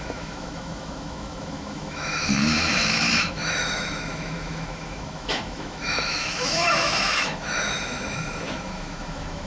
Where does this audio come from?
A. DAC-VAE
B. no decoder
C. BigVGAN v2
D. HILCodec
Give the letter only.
A